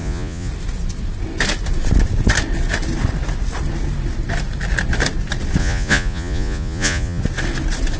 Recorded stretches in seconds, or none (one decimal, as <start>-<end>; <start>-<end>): 0.5-5.6; 7.2-8.0